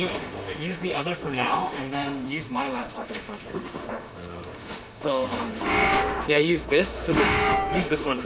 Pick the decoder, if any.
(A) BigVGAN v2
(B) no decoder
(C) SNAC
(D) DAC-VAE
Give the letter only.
D